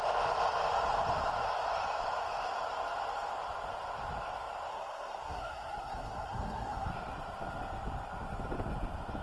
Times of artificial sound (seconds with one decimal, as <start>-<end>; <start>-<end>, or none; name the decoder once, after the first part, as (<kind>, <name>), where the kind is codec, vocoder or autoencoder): 4.7-6.9 (codec, SNAC)